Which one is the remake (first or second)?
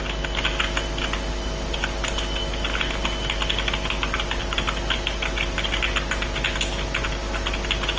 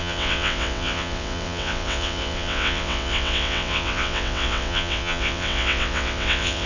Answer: second